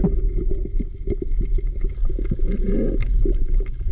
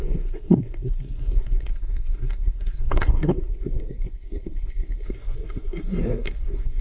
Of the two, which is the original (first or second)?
first